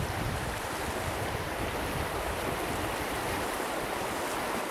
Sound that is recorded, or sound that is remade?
remade